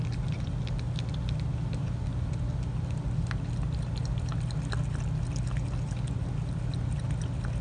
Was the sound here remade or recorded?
recorded